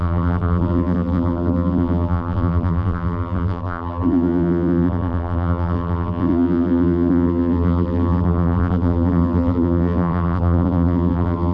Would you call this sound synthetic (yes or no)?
yes